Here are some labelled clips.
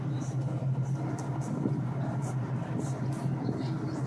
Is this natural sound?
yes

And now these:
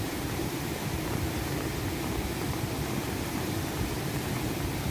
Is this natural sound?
yes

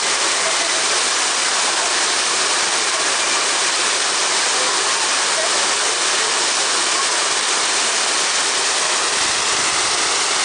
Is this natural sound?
yes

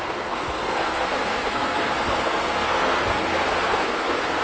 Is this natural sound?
no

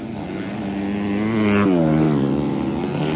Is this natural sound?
yes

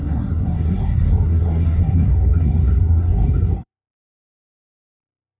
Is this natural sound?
no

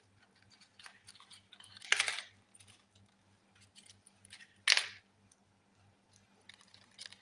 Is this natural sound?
yes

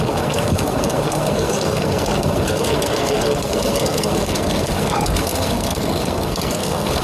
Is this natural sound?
no